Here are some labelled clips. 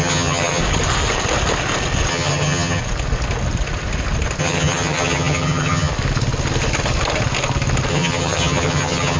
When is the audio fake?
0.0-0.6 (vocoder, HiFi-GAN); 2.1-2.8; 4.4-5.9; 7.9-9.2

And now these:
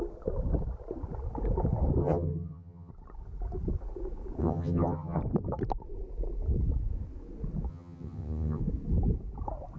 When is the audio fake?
2.0-2.9 (vocoder, HiFi-GAN); 4.4-5.2; 7.7-8.6

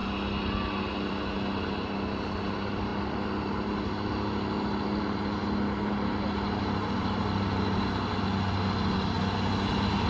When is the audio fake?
none

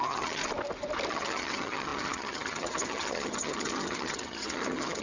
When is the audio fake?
0.0-0.4 (vocoder, HiFi-GAN); 1.1-5.0

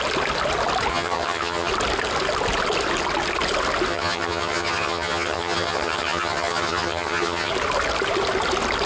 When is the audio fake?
0.9-1.7 (vocoder, HiFi-GAN); 3.9-7.5

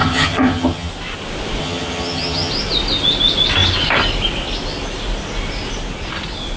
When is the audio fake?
0.0-0.9 (vocoder, HiFi-GAN); 1.6-2.5

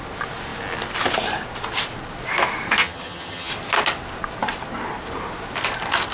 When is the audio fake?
2.8-3.5 (vocoder, HiFi-GAN)

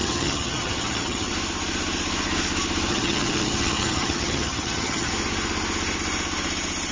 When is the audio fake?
0.0-1.3 (vocoder, HiFi-GAN); 2.9-5.1